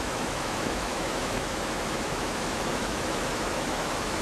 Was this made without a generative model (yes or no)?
no